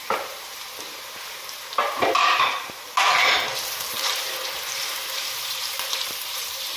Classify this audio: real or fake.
fake